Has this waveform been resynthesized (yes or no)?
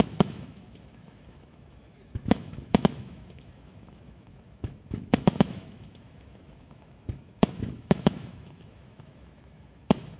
yes